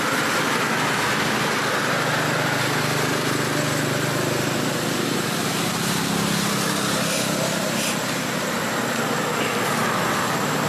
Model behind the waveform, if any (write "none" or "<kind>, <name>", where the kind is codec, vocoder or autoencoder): none